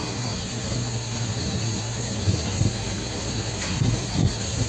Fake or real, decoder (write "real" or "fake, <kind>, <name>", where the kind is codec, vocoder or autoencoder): fake, codec, SNAC